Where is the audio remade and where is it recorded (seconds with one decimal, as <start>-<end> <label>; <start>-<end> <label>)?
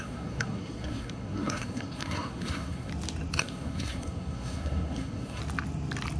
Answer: 0.0-2.9 remade; 2.9-3.4 recorded; 3.4-5.4 remade; 5.4-6.2 recorded